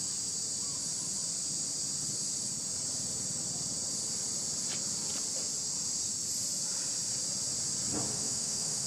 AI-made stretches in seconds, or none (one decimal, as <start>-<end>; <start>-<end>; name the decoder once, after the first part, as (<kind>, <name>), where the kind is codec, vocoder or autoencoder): 8.1-8.9 (autoencoder, DAC-VAE)